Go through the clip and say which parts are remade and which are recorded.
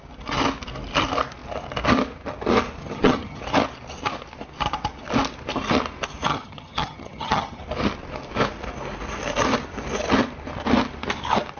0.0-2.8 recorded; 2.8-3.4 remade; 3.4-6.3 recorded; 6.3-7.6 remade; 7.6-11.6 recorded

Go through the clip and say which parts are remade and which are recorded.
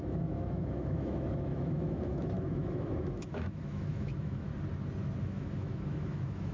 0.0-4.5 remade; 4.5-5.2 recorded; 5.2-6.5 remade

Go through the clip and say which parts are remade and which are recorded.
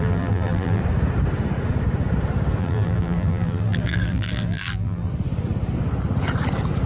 0.0-0.8 remade; 0.8-2.6 recorded; 2.6-5.1 remade; 5.1-6.9 recorded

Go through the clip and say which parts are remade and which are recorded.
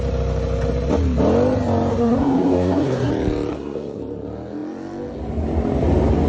0.0-1.9 recorded; 1.9-3.1 remade; 3.1-3.5 recorded; 3.5-4.0 remade; 4.0-6.3 recorded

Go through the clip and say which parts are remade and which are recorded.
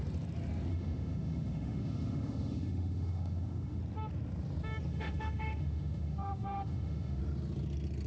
0.0-0.7 recorded; 0.7-3.8 remade; 3.8-4.9 recorded; 4.9-7.2 remade; 7.2-8.1 recorded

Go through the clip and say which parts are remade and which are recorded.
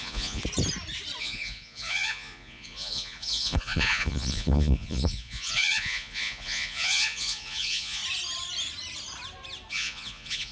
0.0-0.4 remade; 0.4-1.2 recorded; 1.2-8.0 remade; 8.0-9.7 recorded; 9.7-10.5 remade